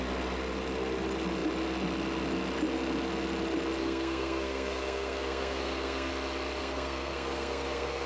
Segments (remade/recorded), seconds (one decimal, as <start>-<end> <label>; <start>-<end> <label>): 0.0-3.8 recorded; 3.8-6.1 remade; 6.1-6.6 recorded; 6.6-8.1 remade